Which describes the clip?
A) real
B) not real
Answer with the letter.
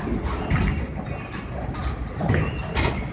A